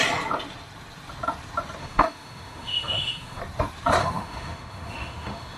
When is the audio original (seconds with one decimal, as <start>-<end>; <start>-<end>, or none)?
0.0-1.8; 3.4-4.0